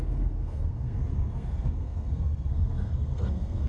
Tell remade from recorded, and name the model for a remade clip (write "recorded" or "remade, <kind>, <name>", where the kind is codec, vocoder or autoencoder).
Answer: remade, codec, SNAC